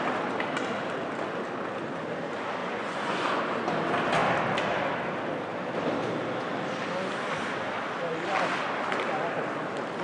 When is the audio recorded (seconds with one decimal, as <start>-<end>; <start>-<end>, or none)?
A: 0.0-2.6; 3.4-10.0